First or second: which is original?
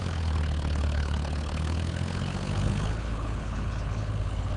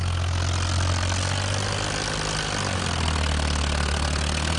second